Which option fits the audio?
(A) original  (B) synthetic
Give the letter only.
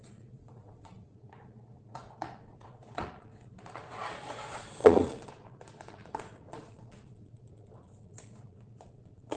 B